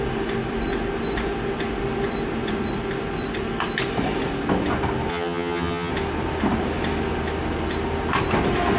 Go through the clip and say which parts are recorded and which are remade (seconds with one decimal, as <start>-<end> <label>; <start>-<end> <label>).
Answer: 0.0-5.1 recorded; 5.1-5.9 remade; 5.9-8.8 recorded

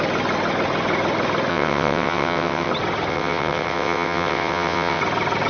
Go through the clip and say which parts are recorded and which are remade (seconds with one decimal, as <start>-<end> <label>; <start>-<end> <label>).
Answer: 0.0-1.5 recorded; 1.5-2.7 remade; 2.7-3.1 recorded; 3.1-5.0 remade; 5.0-5.5 recorded